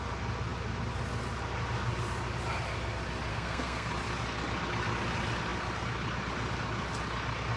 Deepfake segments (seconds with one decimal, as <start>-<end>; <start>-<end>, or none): 3.3-3.9